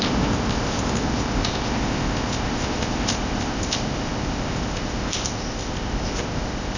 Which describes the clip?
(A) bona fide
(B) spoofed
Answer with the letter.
B